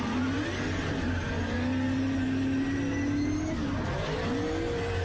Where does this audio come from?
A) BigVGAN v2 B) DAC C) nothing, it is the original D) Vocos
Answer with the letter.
C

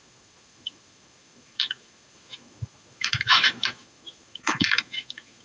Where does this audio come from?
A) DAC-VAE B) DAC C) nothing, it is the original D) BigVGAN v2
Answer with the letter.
A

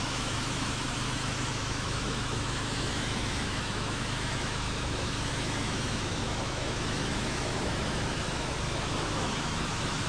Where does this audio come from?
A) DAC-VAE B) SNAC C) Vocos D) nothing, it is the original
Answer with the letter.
A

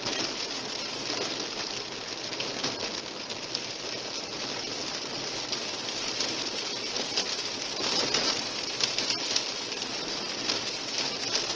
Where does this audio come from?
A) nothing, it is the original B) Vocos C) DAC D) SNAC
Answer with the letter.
A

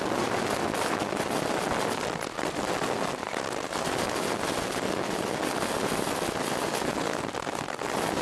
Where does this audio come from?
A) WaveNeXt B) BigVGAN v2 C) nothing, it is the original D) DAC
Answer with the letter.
C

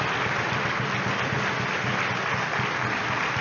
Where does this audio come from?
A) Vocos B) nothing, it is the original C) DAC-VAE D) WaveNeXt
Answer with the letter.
B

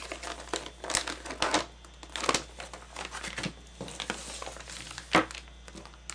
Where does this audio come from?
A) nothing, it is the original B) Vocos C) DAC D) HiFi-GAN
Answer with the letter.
A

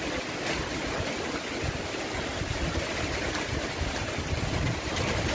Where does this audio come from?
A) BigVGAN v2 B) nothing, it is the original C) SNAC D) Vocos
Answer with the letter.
B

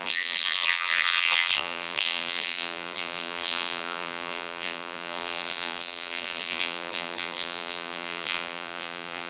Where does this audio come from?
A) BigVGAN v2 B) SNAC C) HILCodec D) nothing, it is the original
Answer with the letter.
A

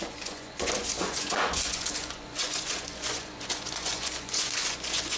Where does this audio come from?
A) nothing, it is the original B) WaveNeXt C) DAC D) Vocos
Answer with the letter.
D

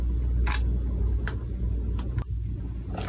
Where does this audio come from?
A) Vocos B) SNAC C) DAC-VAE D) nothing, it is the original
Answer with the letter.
D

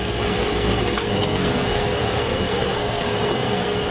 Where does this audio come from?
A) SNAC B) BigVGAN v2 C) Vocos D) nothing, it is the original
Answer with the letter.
A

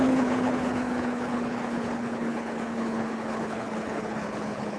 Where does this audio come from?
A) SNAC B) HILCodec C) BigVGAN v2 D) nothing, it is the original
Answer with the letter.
B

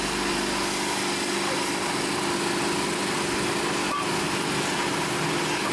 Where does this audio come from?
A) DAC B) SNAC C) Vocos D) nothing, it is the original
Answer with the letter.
D